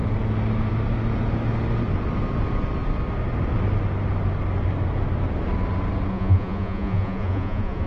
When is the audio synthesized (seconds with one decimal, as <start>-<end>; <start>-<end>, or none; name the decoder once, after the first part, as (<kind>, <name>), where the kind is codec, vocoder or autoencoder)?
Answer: 6.1-7.9 (vocoder, Vocos)